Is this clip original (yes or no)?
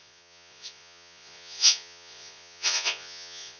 no